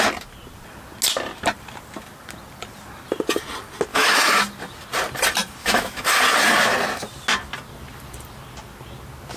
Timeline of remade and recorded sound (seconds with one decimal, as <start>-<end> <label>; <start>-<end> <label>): 0.0-3.9 recorded; 3.9-4.4 remade; 4.4-5.6 recorded; 5.6-6.2 remade; 6.2-9.4 recorded